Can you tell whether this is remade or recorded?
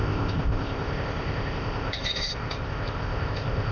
remade